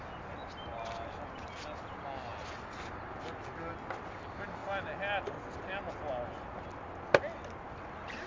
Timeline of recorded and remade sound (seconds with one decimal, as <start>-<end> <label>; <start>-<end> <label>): 0.0-8.3 recorded